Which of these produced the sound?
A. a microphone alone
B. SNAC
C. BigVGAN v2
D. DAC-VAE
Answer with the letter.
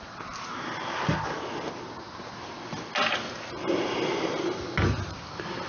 A